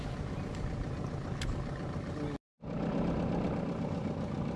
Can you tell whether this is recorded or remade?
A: recorded